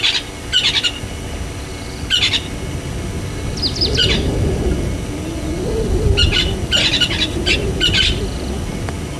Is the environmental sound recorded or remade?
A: recorded